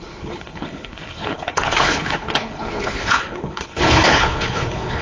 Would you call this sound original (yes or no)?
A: no